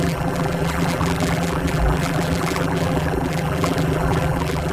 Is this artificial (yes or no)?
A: yes